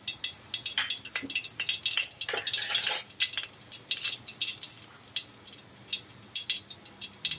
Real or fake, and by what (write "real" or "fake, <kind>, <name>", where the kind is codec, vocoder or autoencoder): real